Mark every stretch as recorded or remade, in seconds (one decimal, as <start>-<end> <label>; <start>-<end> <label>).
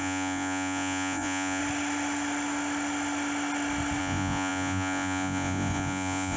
0.0-1.6 remade; 1.6-4.0 recorded; 4.0-6.4 remade